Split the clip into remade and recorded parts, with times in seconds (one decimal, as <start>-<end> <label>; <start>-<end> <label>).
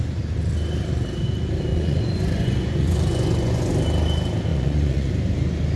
0.0-1.7 recorded; 1.7-3.7 remade; 3.7-4.5 recorded; 4.5-5.1 remade; 5.1-5.8 recorded